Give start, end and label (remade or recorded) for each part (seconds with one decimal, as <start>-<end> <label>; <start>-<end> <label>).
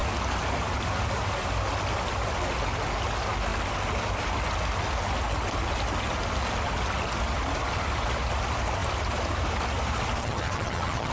0.0-10.2 recorded; 10.2-11.1 remade